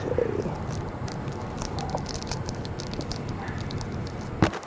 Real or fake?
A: fake